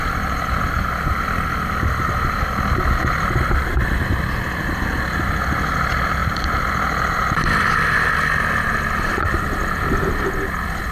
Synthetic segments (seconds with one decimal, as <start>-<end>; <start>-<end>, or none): none